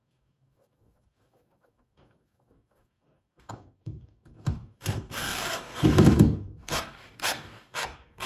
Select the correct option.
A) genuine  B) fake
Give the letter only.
B